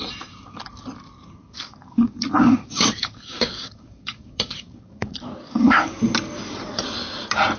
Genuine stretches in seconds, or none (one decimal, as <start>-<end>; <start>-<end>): 0.0-1.4; 6.0-7.6